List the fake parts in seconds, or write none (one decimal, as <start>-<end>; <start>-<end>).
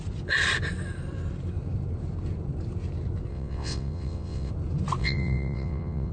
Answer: 3.3-4.5; 5.0-6.1